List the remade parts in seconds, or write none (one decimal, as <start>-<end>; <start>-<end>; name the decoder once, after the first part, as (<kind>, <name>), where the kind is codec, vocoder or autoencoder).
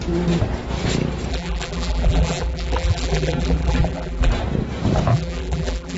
1.3-4.3 (vocoder, BigVGAN v2); 5.1-6.0